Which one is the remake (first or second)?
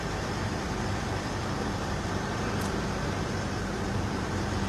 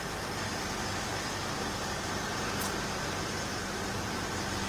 first